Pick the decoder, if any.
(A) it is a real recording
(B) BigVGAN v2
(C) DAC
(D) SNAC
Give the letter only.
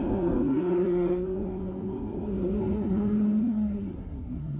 D